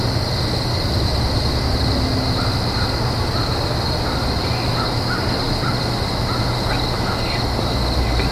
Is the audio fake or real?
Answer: real